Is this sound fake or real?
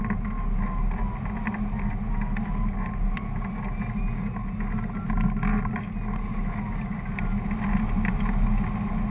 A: real